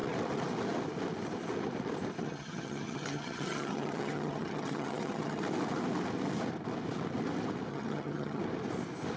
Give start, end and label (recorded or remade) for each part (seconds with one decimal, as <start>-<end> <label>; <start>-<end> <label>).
0.0-2.2 recorded; 2.2-5.4 remade; 5.4-7.7 recorded; 7.7-8.4 remade; 8.4-9.2 recorded